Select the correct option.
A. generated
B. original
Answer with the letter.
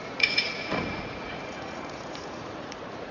A